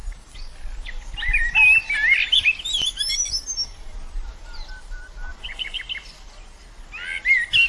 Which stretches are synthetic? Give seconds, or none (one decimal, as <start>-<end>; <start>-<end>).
5.3-5.8